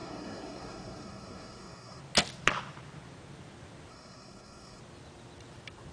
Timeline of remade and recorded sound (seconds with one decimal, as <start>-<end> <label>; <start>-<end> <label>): 0.0-2.0 remade; 2.0-3.9 recorded; 3.9-4.8 remade; 4.8-5.9 recorded